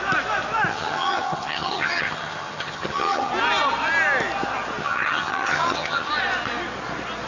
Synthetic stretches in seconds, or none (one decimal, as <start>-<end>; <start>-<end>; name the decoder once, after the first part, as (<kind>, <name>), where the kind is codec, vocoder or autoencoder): 0.7-3.3 (vocoder, HiFi-GAN); 4.8-6.1